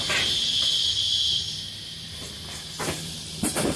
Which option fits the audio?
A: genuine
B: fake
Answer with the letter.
B